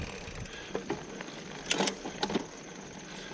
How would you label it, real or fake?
real